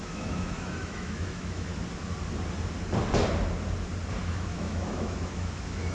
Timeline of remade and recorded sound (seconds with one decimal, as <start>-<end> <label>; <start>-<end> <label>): 0.0-1.7 remade; 1.7-4.2 recorded; 4.2-5.9 remade

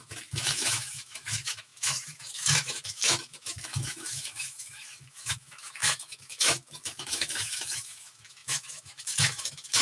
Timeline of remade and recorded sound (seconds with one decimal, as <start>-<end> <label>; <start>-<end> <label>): 0.0-9.8 remade

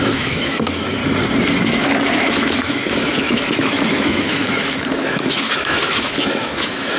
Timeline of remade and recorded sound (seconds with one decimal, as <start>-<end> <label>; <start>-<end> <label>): 0.0-1.0 remade; 1.0-1.6 recorded; 1.6-7.0 remade

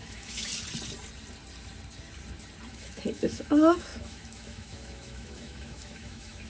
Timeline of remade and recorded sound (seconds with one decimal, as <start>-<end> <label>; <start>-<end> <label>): 0.0-0.5 remade; 0.5-2.7 recorded; 2.7-6.5 remade

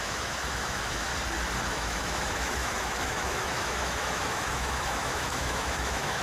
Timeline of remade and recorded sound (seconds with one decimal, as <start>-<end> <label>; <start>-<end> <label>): 0.0-1.1 remade; 1.1-1.7 recorded; 1.7-6.2 remade

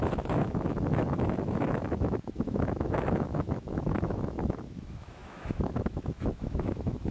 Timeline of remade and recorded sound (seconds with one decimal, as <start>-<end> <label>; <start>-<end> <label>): 0.0-7.1 remade

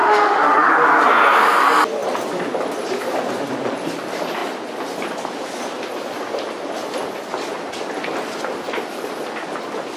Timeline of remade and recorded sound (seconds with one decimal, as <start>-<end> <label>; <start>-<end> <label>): 0.0-0.7 remade; 0.7-10.0 recorded

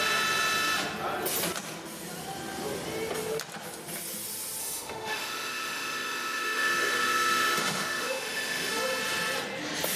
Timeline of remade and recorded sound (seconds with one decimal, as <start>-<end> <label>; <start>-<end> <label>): 0.0-4.6 recorded; 4.6-8.7 remade; 8.7-10.0 recorded